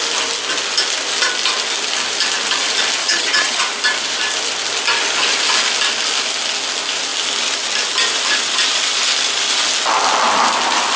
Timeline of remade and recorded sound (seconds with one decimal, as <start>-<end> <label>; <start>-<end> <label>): 0.0-3.0 recorded; 3.0-3.6 remade; 3.6-11.0 recorded